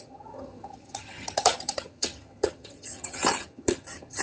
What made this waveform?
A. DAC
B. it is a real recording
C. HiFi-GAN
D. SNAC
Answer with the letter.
C